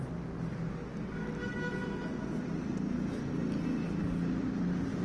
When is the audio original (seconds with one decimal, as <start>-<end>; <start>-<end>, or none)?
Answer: 0.0-5.0